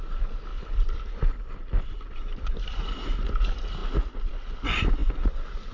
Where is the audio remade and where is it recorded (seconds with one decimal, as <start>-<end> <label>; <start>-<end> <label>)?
0.0-0.5 recorded; 0.5-2.8 remade; 2.8-5.7 recorded

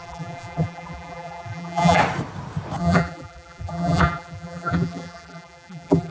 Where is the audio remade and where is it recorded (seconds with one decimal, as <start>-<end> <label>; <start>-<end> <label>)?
0.0-2.0 remade; 2.0-2.8 recorded; 2.8-6.1 remade

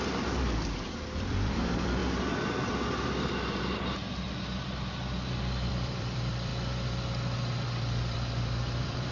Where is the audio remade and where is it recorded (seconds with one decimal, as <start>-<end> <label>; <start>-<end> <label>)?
0.0-2.0 remade; 2.0-2.7 recorded; 2.7-5.0 remade; 5.0-5.7 recorded; 5.7-6.5 remade; 6.5-8.0 recorded; 8.0-9.1 remade

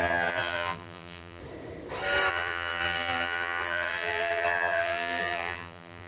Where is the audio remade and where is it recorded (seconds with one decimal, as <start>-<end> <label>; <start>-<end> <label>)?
0.0-1.4 remade; 1.4-2.3 recorded; 2.3-6.1 remade

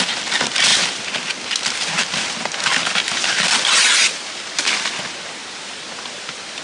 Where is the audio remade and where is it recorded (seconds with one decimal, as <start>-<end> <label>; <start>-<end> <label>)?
0.0-0.7 recorded; 0.7-4.7 remade; 4.7-5.4 recorded; 5.4-6.6 remade

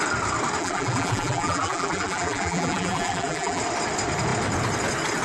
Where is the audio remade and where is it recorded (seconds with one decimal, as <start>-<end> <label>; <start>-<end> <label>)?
0.0-0.6 recorded; 0.6-3.6 remade; 3.6-5.2 recorded

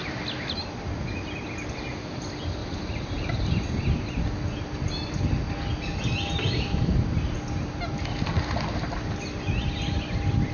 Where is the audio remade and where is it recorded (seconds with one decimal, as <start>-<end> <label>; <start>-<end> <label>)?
0.0-2.6 recorded; 2.6-3.6 remade; 3.6-10.5 recorded